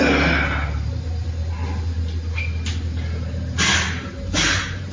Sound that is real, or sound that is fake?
real